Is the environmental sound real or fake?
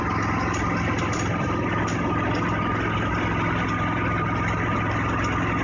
real